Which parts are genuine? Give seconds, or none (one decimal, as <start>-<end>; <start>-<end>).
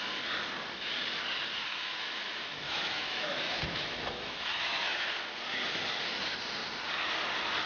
0.0-1.7; 5.1-7.7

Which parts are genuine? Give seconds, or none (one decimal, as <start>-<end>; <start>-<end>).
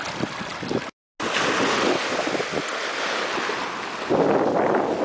0.0-5.0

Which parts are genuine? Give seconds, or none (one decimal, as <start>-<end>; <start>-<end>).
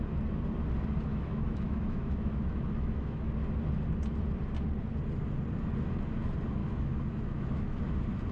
0.0-1.1; 3.3-6.6; 7.8-8.3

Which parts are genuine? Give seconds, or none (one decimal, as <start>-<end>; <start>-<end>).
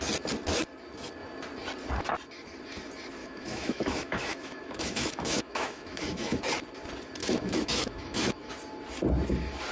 0.0-3.2; 6.4-7.2; 8.5-9.7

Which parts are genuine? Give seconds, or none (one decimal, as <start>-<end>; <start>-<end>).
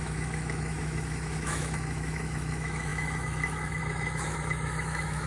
none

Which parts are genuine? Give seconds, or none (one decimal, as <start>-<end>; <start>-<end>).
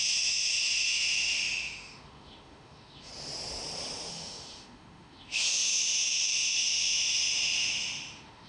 3.1-4.1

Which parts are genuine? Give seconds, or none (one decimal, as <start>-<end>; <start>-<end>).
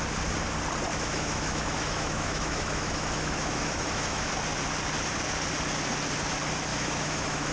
0.0-0.9; 4.3-6.7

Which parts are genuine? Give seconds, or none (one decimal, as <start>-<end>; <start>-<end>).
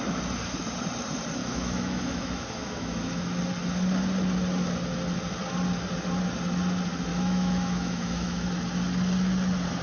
0.0-1.4; 3.4-7.1; 8.5-9.8